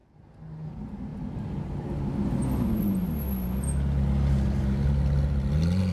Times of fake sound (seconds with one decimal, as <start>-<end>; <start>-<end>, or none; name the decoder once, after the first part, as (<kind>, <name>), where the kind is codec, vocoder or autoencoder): none